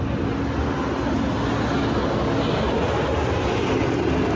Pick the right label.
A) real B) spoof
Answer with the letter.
A